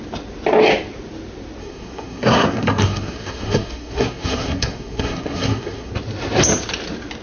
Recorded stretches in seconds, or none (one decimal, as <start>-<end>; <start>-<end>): 0.0-1.6; 5.9-7.2